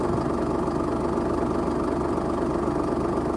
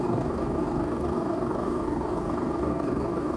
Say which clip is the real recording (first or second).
first